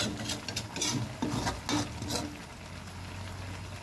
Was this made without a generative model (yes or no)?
yes